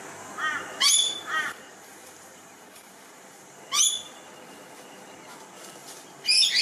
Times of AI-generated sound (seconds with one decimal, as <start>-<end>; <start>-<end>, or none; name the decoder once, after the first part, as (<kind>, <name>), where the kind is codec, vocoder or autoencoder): 1.0-3.6 (vocoder, BigVGAN v2); 5.8-6.6